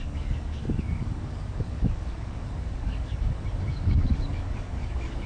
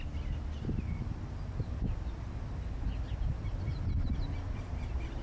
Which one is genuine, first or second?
second